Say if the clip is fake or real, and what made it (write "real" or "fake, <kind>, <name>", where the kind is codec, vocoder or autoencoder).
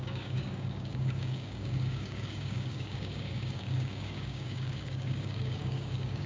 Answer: fake, codec, DAC